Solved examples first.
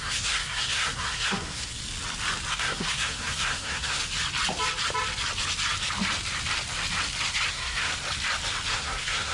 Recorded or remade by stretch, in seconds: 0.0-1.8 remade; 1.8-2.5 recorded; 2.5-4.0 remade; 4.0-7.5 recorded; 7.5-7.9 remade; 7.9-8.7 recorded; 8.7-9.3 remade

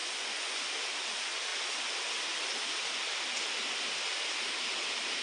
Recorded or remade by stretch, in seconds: 0.0-0.7 remade; 0.7-5.2 recorded